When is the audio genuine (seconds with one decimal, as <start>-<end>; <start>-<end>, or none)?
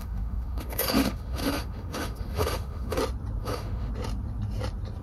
3.0-3.4; 3.9-5.0